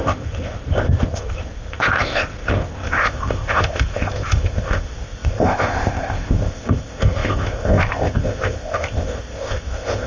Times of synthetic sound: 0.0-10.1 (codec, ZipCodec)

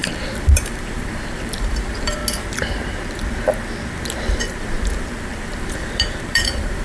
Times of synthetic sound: 0.0-2.2 (vocoder, BigVGAN v2); 4.6-6.8

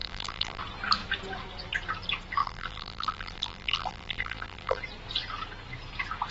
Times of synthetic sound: 0.0-0.6 (vocoder, BigVGAN v2); 2.4-4.8

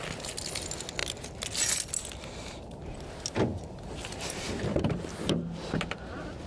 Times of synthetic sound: 3.5-5.1 (vocoder, BigVGAN v2)

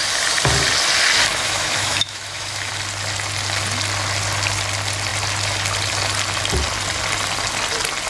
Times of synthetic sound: 1.3-2.7 (autoencoder, DAC-VAE)

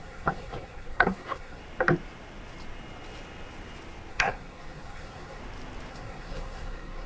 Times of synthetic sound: 0.0-1.6 (codec, SNAC); 4.1-5.4; 5.9-7.1

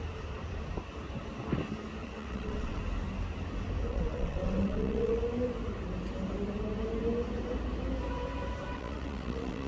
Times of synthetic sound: 2.0-2.8 (vocoder, WaveNeXt); 3.9-5.2; 8.7-9.7

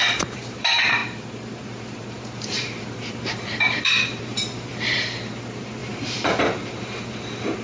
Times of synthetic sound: 0.0-7.6 (vocoder, BigVGAN v2)